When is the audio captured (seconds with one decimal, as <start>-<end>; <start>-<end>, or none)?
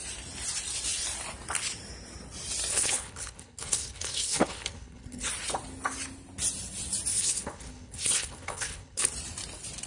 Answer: 0.0-2.7; 5.3-7.1; 9.1-9.9